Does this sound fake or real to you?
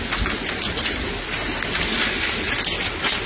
real